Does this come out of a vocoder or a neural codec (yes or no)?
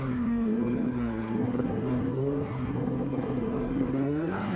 yes